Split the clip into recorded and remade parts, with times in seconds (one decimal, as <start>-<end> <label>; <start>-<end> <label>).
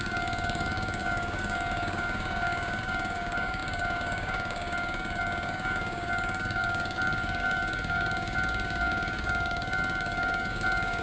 0.0-11.0 remade